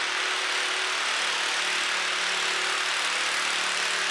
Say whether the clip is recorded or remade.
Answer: recorded